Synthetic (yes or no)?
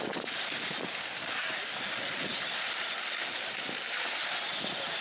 no